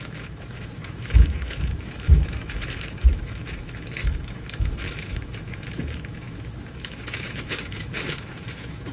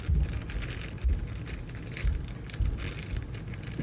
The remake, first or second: first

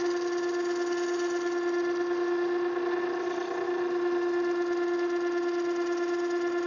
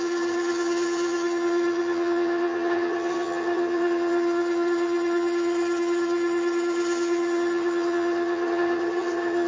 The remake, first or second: second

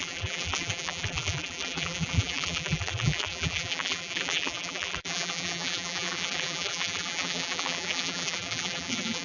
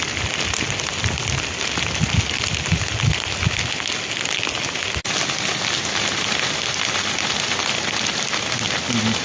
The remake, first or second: first